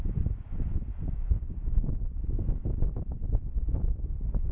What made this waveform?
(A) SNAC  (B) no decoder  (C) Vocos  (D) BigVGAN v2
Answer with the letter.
B